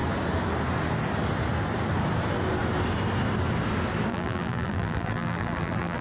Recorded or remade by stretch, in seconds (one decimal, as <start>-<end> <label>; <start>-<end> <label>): 0.0-4.1 recorded; 4.1-6.0 remade